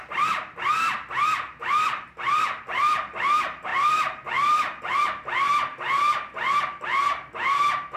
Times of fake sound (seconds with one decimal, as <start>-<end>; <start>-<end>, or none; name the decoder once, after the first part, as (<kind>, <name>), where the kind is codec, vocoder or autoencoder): none